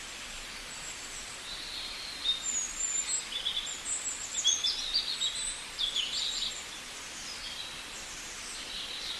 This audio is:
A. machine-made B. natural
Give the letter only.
B